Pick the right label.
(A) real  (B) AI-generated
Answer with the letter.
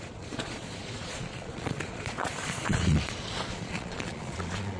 B